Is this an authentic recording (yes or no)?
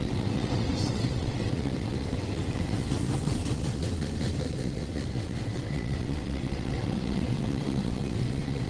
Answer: no